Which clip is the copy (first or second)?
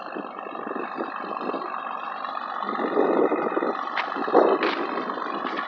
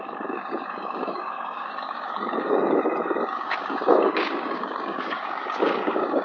second